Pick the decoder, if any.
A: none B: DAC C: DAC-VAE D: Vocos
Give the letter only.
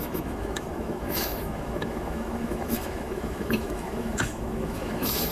C